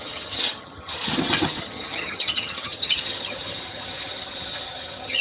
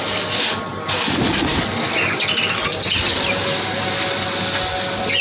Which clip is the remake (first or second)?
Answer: first